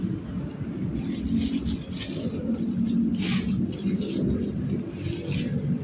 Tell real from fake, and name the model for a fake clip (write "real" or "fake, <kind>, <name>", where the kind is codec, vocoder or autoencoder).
real